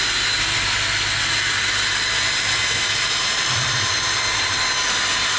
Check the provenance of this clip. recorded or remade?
recorded